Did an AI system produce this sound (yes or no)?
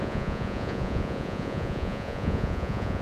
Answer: yes